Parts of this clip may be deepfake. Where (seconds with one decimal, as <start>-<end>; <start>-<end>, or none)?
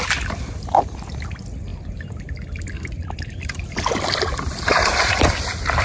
1.7-4.2; 4.7-5.3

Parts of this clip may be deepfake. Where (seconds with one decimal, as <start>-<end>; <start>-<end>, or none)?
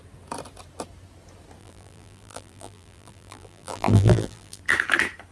1.6-4.6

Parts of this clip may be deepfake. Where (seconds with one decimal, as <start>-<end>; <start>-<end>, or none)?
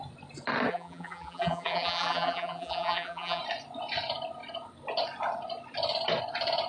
0.7-3.4